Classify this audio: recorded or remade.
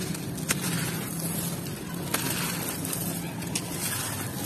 recorded